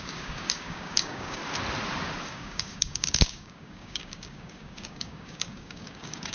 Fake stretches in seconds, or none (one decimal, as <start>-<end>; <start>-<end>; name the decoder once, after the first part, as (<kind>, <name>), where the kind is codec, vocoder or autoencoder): 0.0-1.4 (codec, DAC); 2.3-6.3